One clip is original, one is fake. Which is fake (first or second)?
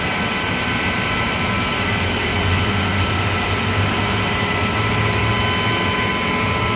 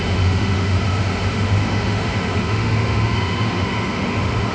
second